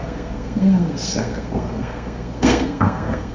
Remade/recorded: remade